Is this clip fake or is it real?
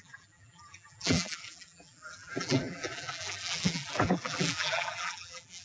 fake